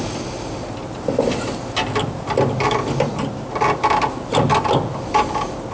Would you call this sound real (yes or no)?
yes